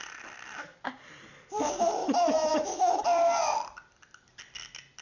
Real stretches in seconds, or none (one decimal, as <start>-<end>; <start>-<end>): 0.0-2.0; 3.0-5.0